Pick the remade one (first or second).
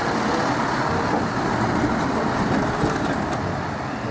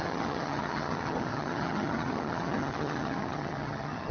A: second